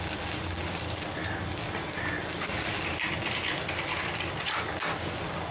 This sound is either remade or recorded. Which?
recorded